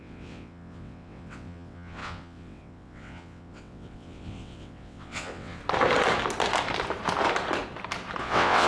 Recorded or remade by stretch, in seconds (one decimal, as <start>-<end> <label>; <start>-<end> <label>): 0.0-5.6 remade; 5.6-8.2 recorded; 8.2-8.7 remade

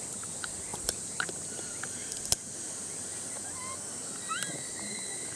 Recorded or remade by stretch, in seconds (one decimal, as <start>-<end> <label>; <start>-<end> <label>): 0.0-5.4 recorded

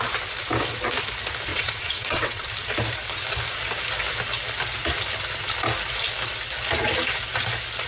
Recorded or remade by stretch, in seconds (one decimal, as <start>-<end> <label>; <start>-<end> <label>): 0.0-1.5 recorded; 1.5-2.5 remade; 2.5-7.9 recorded

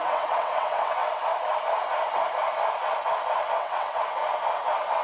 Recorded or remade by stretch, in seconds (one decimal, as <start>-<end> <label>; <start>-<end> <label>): 0.0-1.0 remade; 1.0-3.6 recorded; 3.6-4.2 remade; 4.2-5.0 recorded